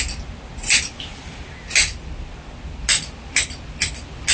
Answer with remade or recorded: recorded